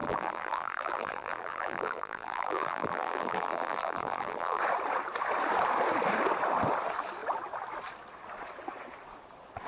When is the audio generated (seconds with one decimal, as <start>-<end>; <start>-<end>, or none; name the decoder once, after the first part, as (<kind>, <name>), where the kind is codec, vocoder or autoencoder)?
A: 0.0-4.6 (vocoder, BigVGAN v2)